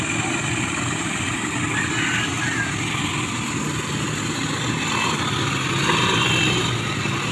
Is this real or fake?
real